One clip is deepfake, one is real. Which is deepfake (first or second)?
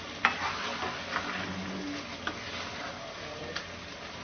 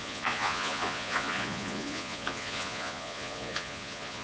second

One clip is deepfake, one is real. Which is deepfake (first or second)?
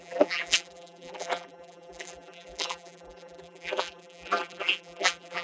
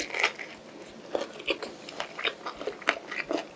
first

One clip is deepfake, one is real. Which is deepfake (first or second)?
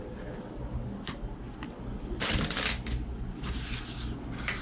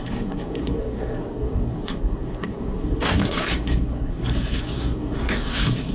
second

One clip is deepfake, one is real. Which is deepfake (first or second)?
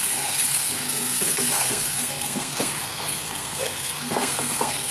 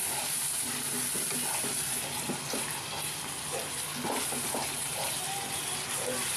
first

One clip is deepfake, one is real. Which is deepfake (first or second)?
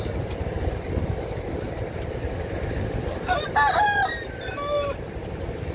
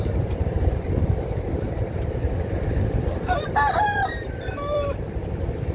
second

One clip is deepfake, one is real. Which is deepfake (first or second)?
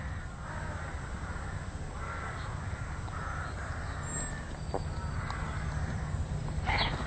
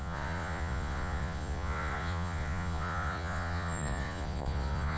second